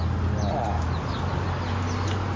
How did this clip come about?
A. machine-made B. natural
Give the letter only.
B